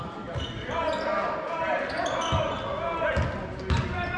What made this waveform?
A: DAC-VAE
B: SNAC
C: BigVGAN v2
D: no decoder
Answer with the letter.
D